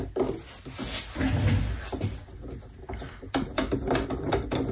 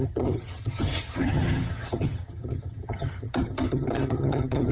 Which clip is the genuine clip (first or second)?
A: first